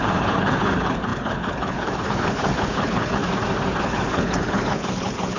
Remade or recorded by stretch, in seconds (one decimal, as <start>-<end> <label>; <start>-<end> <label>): 0.0-3.2 remade; 3.2-3.8 recorded; 3.8-5.4 remade